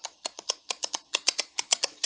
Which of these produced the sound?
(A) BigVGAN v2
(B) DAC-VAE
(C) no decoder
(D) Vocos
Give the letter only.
D